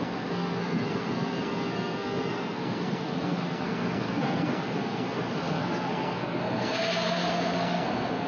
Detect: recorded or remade remade